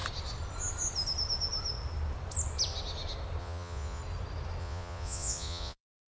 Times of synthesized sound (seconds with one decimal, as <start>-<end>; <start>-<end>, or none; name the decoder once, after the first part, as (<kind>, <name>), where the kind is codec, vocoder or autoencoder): 3.4-4.0 (vocoder, Vocos); 4.6-6.1

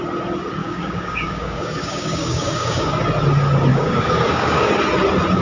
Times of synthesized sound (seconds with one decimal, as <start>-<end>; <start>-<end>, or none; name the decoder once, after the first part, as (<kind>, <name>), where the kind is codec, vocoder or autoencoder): 0.6-3.0 (codec, DAC); 3.7-4.7

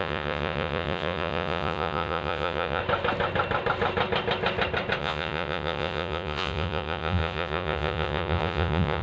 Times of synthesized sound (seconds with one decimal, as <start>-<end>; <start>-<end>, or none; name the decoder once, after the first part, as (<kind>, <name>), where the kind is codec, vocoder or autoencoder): 0.0-2.8 (vocoder, Vocos); 5.0-9.0

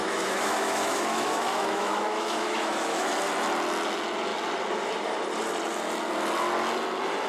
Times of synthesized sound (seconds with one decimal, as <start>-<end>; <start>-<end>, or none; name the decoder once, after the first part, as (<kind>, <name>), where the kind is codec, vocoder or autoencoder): 0.0-3.1 (autoencoder, DAC-VAE)

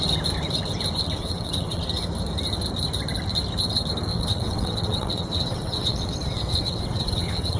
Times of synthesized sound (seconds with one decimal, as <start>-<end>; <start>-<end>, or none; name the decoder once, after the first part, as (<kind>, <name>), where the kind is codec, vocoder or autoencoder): 1.2-1.8 (vocoder, WaveNeXt); 4.1-7.6

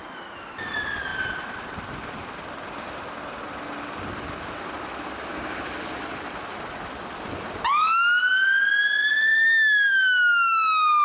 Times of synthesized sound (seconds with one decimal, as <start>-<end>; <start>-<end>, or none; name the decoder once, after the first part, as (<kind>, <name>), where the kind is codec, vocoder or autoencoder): none

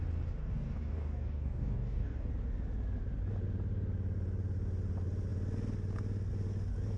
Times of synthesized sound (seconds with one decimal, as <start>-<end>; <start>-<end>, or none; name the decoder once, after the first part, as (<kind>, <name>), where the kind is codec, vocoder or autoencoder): 0.4-2.3 (codec, DAC)

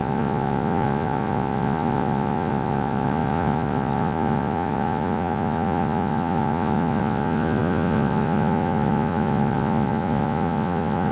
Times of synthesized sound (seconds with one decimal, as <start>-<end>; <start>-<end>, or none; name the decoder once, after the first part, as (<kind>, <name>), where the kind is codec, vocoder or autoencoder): 0.0-11.1 (vocoder, Vocos)